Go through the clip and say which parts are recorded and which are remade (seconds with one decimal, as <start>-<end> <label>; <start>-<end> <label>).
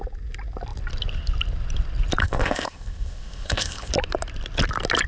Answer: 0.0-2.2 recorded; 2.2-3.9 remade; 3.9-5.1 recorded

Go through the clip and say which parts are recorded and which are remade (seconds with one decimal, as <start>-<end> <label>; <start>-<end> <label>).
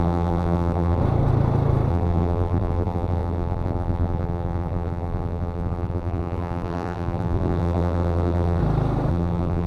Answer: 0.0-1.0 remade; 1.0-1.9 recorded; 1.9-8.6 remade; 8.6-9.1 recorded; 9.1-9.7 remade